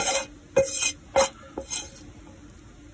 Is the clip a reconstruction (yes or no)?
no